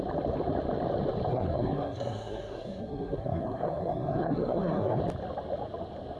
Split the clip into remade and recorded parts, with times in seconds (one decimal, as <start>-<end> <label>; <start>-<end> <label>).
0.0-1.3 recorded; 1.3-5.0 remade; 5.0-6.2 recorded